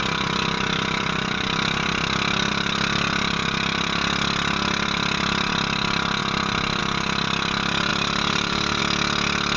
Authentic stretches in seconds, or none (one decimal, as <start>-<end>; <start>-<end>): 0.0-7.9; 8.8-9.6